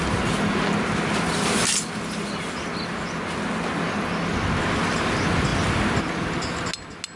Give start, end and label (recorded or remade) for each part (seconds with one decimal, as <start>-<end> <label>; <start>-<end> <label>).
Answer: 0.0-7.2 recorded